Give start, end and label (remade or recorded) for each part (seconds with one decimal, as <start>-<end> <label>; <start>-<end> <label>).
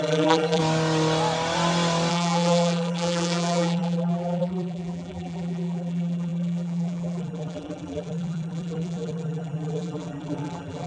0.0-0.6 remade; 0.6-2.1 recorded; 2.1-10.9 remade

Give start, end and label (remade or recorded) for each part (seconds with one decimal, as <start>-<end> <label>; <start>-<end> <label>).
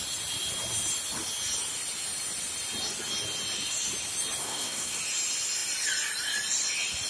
0.0-4.4 recorded; 4.4-5.0 remade; 5.0-7.1 recorded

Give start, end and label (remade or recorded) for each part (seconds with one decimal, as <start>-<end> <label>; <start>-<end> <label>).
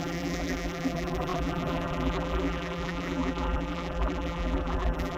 0.0-5.2 remade